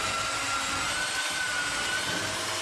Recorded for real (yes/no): yes